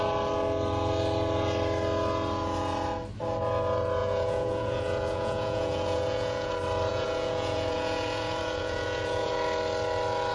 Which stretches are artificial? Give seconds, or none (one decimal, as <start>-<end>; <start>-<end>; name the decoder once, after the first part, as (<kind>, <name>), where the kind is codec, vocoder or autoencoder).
4.0-6.5 (vocoder, Vocos); 6.9-9.3